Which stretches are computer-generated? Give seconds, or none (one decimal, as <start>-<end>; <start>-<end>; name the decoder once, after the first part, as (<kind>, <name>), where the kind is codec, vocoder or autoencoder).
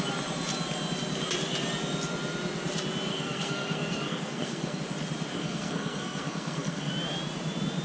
3.1-4.8 (codec, SNAC); 5.3-6.9